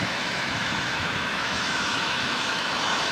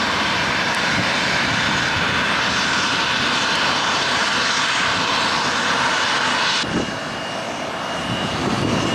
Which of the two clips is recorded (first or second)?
second